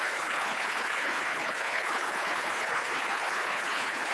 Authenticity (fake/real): fake